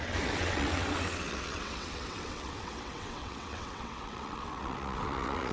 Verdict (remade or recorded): remade